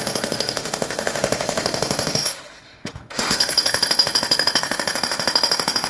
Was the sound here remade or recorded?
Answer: remade